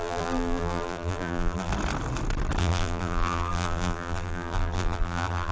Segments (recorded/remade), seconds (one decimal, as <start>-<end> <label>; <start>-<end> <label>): 0.0-1.7 remade; 1.7-2.6 recorded; 2.6-5.5 remade